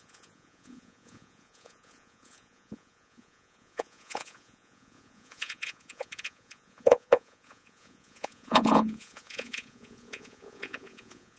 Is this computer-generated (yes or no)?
yes